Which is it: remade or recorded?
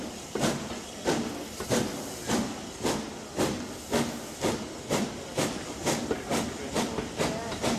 recorded